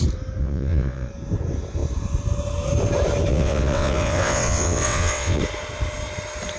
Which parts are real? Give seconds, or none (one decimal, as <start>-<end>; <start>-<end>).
0.0-0.4; 1.1-3.3; 5.4-6.6